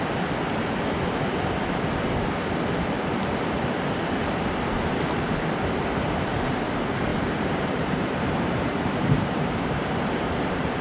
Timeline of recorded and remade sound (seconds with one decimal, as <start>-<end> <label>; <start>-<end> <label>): 0.0-7.1 recorded; 7.1-10.8 remade

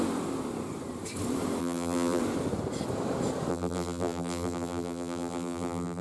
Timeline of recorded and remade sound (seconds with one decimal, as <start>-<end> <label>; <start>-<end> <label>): 0.0-1.6 recorded; 1.6-2.2 remade; 2.2-3.5 recorded; 3.5-6.0 remade

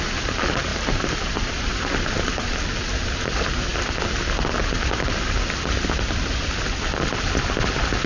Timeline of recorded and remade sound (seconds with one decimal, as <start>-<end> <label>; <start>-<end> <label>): 0.0-0.7 recorded; 0.7-2.0 remade; 2.0-8.1 recorded

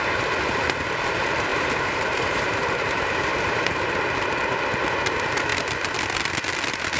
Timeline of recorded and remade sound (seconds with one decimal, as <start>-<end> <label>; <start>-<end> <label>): 0.0-1.5 recorded; 1.5-3.9 remade; 3.9-7.0 recorded

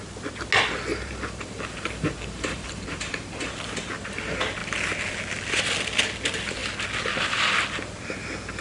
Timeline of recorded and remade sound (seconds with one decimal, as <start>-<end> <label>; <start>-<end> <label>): 0.0-0.9 recorded; 0.9-3.5 remade; 3.5-8.6 recorded

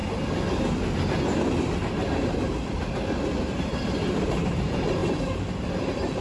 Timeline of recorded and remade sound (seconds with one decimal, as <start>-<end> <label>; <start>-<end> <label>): 0.0-3.3 recorded; 3.3-6.2 remade

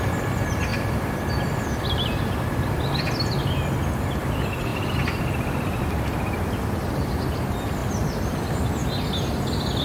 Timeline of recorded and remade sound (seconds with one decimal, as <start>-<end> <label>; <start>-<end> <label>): 0.0-0.7 recorded; 0.7-3.1 remade; 3.1-4.7 recorded; 4.7-5.8 remade; 5.8-7.8 recorded; 7.8-8.3 remade; 8.3-9.8 recorded

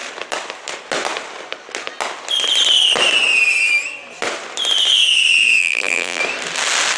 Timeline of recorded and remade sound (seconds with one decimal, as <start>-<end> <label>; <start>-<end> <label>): 0.0-5.6 recorded; 5.6-6.2 remade; 6.2-7.0 recorded